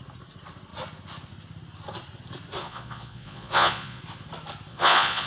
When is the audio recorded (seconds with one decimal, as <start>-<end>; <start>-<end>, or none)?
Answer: 0.0-2.6; 4.0-4.7